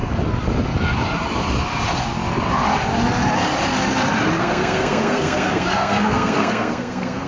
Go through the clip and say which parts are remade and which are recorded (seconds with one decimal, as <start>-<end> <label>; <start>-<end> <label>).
0.0-4.4 recorded; 4.4-7.3 remade